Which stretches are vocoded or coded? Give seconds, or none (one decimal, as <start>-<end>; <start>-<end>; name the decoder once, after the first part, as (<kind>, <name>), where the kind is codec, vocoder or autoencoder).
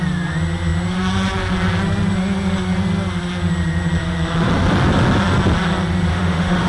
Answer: 6.1-6.7 (autoencoder, DAC-VAE)